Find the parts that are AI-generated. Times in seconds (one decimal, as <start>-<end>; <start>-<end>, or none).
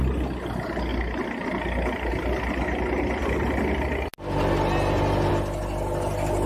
none